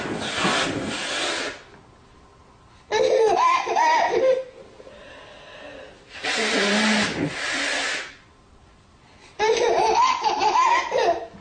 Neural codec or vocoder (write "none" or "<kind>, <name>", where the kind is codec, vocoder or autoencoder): none